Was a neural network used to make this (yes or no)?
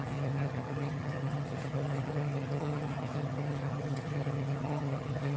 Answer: yes